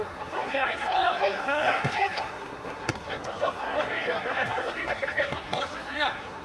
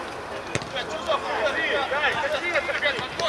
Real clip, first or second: second